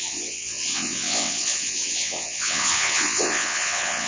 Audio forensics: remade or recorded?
remade